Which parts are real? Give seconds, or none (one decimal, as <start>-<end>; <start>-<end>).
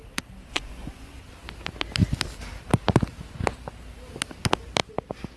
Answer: 0.0-0.5; 1.2-5.4